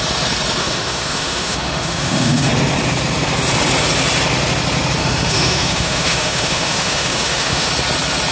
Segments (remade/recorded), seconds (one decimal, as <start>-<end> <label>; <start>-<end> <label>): 0.0-0.6 recorded; 0.6-2.5 remade; 2.5-5.0 recorded; 5.0-7.7 remade; 7.7-8.3 recorded